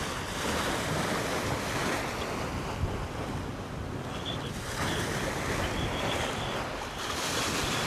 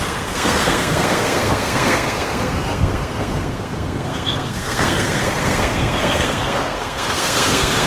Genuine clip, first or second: first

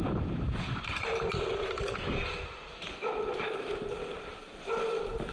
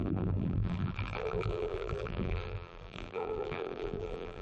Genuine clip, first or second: first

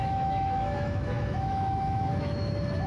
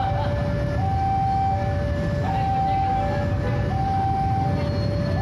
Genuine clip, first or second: second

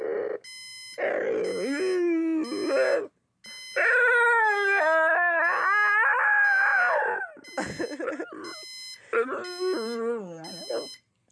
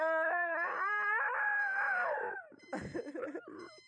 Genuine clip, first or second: first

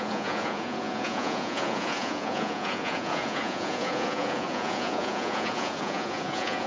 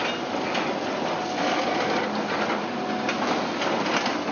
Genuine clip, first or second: second